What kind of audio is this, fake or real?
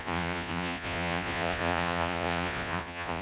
fake